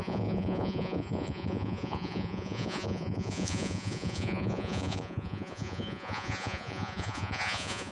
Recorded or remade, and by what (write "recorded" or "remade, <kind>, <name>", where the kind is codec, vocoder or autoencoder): remade, vocoder, Vocos